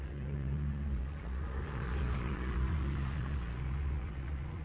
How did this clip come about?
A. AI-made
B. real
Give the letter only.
A